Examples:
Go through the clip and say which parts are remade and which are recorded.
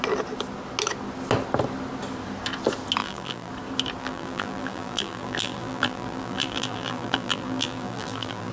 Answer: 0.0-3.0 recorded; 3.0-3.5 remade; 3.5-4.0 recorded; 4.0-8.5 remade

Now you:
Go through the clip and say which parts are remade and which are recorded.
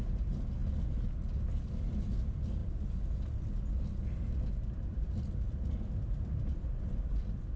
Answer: 0.0-7.6 recorded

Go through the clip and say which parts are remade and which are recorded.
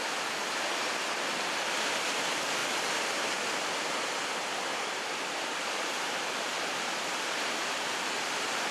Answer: 0.0-2.6 recorded; 2.6-7.7 remade; 7.7-8.7 recorded